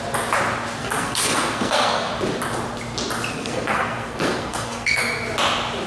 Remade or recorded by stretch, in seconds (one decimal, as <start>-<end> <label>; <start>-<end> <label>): 0.0-0.8 recorded; 0.8-2.1 remade; 2.1-3.3 recorded; 3.3-5.0 remade; 5.0-5.9 recorded